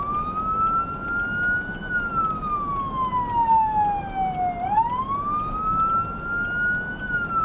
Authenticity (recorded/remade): recorded